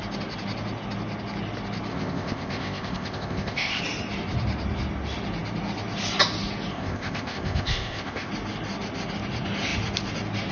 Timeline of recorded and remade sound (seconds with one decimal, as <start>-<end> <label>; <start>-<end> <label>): 0.0-1.9 recorded; 1.9-3.8 remade; 3.8-6.7 recorded; 6.7-8.3 remade; 8.3-10.5 recorded